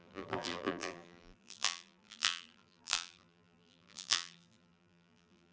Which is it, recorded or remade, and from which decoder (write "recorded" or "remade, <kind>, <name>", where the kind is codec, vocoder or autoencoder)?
remade, vocoder, BigVGAN v2